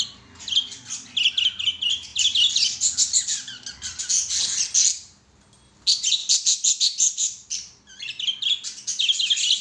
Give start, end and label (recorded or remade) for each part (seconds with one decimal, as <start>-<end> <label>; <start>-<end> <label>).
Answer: 0.0-6.2 recorded; 6.2-8.2 remade; 8.2-9.6 recorded

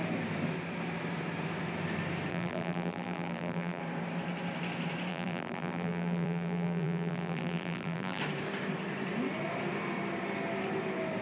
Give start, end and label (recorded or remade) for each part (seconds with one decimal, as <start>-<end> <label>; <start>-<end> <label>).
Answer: 0.0-2.3 recorded; 2.3-3.8 remade; 3.8-5.1 recorded; 5.1-8.2 remade; 8.2-11.2 recorded